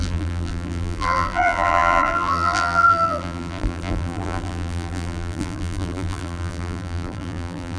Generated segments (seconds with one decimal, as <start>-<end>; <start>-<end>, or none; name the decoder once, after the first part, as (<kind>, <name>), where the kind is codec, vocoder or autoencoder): 0.0-7.8 (vocoder, BigVGAN v2)